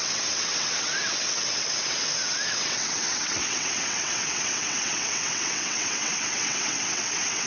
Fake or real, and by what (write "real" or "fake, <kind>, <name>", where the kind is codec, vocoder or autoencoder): fake, vocoder, WaveNeXt